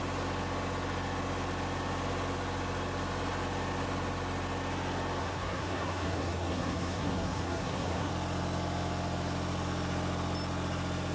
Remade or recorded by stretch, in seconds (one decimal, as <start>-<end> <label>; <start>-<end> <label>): 0.0-5.2 recorded; 5.2-8.1 remade; 8.1-11.1 recorded